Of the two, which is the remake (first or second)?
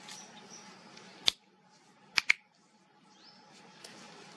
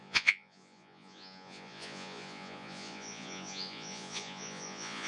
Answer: second